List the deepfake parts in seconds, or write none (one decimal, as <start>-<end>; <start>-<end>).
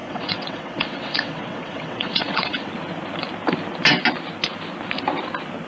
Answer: 0.0-2.7